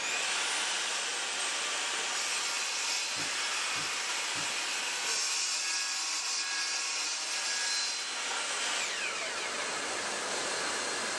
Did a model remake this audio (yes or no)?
no